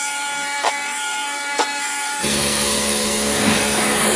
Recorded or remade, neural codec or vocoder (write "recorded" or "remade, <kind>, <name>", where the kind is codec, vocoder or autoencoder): remade, codec, SNAC